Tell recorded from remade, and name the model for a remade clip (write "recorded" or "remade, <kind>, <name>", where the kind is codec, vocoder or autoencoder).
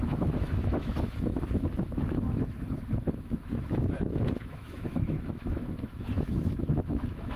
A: remade, autoencoder, DAC-VAE